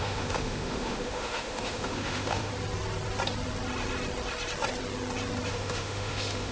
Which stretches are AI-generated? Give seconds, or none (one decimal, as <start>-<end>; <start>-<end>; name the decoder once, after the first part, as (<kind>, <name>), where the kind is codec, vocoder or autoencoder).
0.0-2.5 (autoencoder, DAC-VAE); 5.5-6.5